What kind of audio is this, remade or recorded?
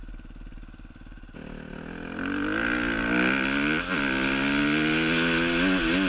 recorded